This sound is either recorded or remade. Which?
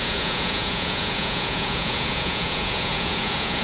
remade